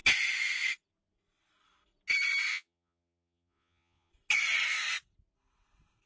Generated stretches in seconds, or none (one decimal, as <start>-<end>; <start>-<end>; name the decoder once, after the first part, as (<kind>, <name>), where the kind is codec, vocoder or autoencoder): 2.5-4.1 (vocoder, Vocos)